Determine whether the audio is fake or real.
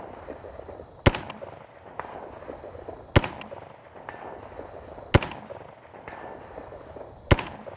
real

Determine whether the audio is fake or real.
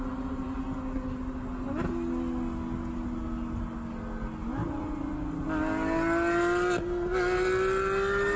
real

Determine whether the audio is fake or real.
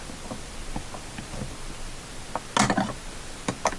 real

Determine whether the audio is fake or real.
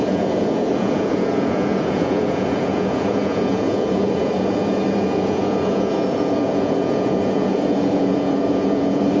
fake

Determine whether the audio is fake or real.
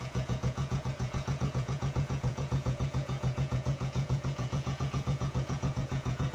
fake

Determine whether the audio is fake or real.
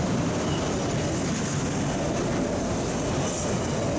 real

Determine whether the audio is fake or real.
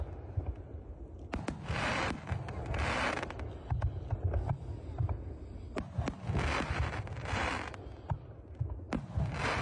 real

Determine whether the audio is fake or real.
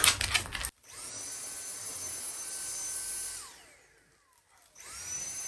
real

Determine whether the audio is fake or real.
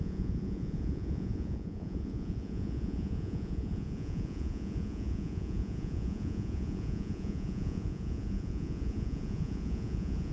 fake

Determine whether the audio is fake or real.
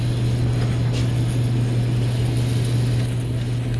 real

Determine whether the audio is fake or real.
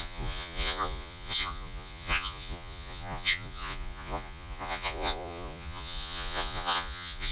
fake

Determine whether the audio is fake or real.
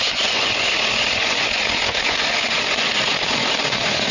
fake